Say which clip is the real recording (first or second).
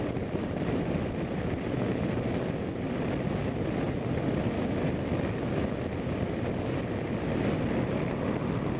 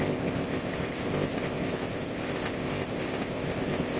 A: first